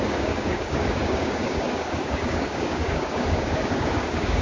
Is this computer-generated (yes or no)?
yes